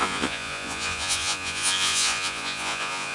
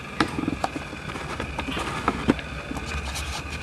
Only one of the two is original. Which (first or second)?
second